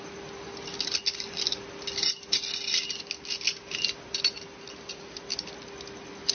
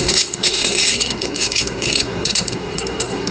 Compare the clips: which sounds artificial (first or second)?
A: second